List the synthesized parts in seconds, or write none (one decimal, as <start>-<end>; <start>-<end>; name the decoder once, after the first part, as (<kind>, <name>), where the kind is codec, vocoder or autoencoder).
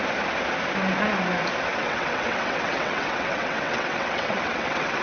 1.7-5.0 (vocoder, WaveNeXt)